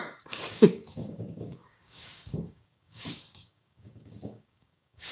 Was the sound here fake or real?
fake